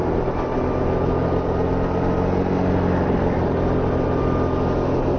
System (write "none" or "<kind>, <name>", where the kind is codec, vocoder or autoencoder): none